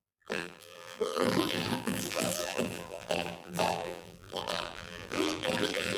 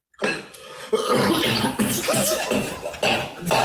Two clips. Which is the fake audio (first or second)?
first